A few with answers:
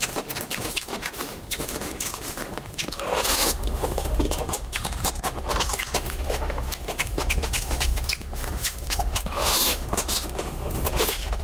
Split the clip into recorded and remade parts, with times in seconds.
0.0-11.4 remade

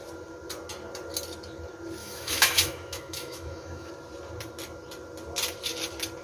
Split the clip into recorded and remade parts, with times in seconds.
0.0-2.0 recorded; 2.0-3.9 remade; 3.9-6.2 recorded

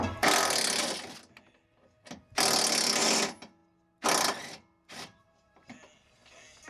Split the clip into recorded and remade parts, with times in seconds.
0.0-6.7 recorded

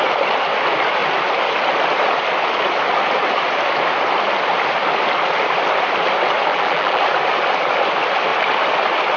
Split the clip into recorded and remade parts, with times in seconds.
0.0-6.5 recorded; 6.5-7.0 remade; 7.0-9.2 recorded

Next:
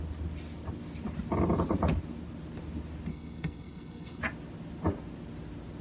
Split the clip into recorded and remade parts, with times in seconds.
0.0-3.1 recorded; 3.1-4.2 remade; 4.2-5.8 recorded

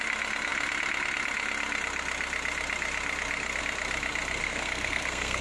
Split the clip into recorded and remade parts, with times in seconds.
0.0-4.4 recorded; 4.4-5.4 remade